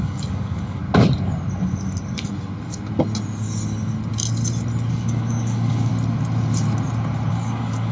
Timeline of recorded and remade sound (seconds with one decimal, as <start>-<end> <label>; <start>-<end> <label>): 0.0-0.8 remade; 0.8-4.9 recorded; 4.9-5.9 remade; 5.9-7.3 recorded; 7.3-7.9 remade